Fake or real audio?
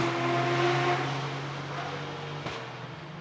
real